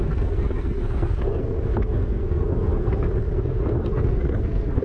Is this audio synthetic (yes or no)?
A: yes